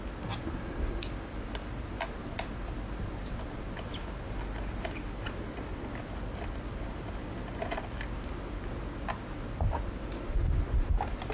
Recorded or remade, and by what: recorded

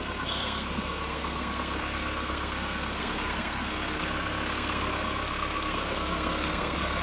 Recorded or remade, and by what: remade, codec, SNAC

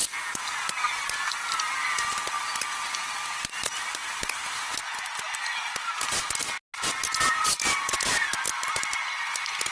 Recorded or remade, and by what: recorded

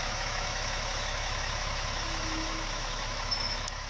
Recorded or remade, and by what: remade, autoencoder, DAC-VAE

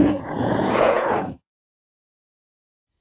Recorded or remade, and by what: remade, vocoder, Vocos